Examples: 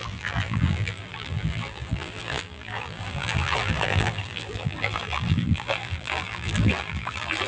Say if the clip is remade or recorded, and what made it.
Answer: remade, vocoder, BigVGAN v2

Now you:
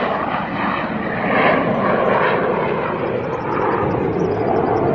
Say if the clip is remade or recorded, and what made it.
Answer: recorded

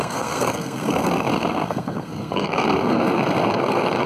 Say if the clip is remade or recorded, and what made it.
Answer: remade, codec, SNAC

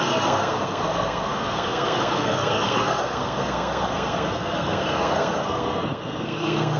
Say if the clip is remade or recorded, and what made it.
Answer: remade, codec, SNAC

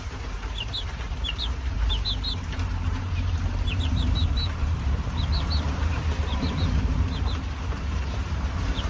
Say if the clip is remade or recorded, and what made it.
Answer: remade, vocoder, BigVGAN v2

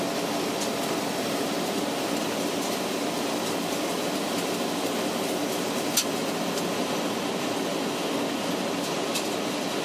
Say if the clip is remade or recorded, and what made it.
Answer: recorded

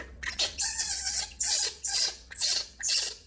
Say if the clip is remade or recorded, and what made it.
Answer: remade, vocoder, WaveNeXt